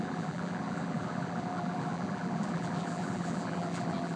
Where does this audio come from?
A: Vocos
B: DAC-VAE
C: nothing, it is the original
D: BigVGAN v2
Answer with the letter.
D